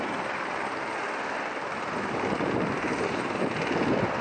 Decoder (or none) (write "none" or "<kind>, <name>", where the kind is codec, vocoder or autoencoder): none